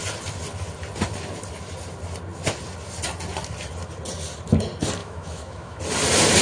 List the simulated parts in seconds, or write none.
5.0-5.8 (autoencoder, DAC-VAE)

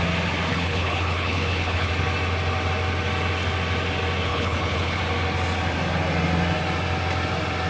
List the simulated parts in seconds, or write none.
0.5-1.9 (codec, HILCodec); 4.3-5.0

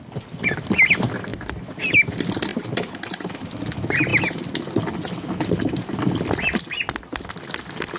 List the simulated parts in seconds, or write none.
none